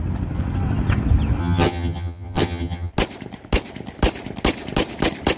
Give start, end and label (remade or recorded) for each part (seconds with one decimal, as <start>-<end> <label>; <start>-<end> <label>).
0.0-1.4 recorded; 1.4-2.9 remade; 2.9-5.4 recorded